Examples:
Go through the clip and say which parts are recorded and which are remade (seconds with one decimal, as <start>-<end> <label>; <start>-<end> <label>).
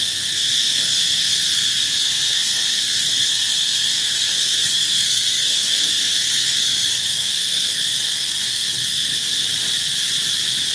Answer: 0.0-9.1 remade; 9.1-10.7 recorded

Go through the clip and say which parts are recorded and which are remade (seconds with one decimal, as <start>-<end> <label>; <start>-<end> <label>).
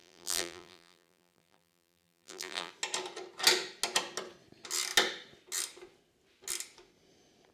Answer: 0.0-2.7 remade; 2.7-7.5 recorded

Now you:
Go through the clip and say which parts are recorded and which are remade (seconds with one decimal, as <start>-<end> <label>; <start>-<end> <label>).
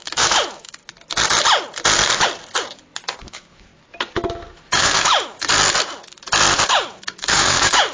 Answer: 0.0-0.8 remade; 0.8-3.2 recorded; 3.2-3.7 remade; 3.7-4.4 recorded; 4.4-5.5 remade; 5.5-6.7 recorded; 6.7-7.9 remade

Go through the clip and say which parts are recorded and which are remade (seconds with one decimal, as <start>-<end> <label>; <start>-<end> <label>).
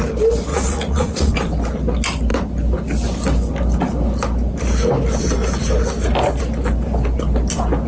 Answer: 0.0-0.5 recorded; 0.5-1.3 remade; 1.3-7.9 recorded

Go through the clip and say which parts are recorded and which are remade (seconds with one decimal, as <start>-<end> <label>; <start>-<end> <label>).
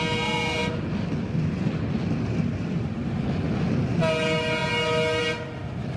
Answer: 0.0-6.0 recorded